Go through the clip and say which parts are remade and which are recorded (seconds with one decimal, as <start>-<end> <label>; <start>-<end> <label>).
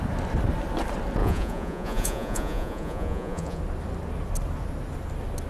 0.0-1.2 recorded; 1.2-3.6 remade; 3.6-5.5 recorded